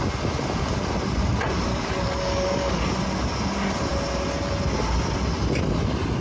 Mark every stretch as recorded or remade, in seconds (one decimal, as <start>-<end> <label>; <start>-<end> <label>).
0.0-1.7 recorded; 1.7-2.8 remade; 2.8-6.2 recorded